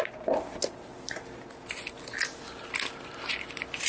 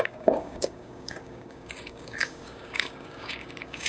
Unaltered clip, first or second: first